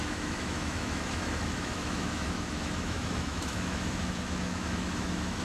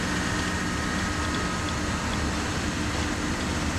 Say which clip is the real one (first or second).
second